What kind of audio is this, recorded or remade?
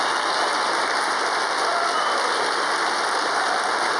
recorded